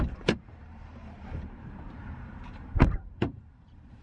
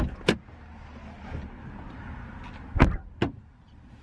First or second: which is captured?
second